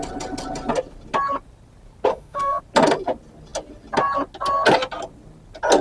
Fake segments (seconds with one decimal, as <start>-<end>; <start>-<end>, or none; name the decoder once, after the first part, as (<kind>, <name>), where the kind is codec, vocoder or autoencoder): 2.1-2.6 (autoencoder, DAC-VAE)